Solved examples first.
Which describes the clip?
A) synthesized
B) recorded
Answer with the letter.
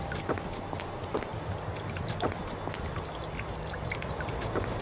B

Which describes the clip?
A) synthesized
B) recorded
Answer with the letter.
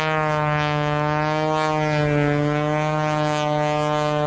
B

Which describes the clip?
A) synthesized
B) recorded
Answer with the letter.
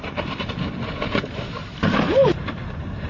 A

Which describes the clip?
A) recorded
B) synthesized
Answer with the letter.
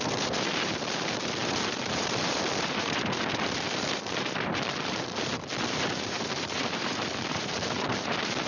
B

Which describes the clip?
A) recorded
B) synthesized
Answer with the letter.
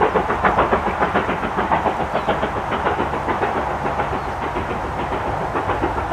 A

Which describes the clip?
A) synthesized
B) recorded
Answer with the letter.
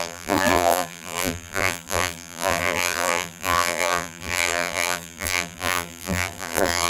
A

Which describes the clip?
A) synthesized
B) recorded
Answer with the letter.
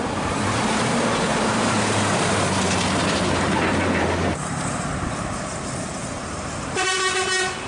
A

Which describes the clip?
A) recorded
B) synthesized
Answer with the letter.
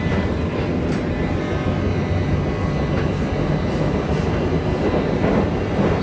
A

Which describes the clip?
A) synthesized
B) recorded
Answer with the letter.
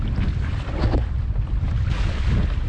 B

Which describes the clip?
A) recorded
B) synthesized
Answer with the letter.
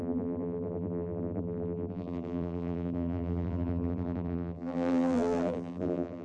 B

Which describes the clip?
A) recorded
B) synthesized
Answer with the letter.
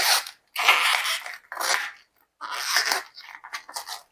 A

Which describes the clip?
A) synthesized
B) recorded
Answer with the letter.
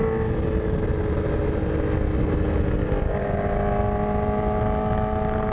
B